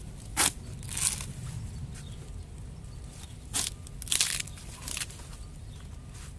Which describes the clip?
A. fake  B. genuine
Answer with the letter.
B